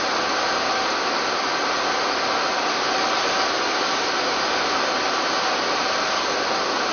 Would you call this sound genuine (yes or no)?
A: yes